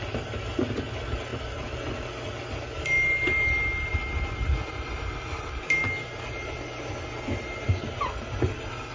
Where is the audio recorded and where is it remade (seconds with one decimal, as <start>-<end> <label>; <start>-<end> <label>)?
0.0-8.9 recorded